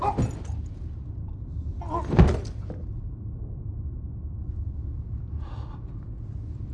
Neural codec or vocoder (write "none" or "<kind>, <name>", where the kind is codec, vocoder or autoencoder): none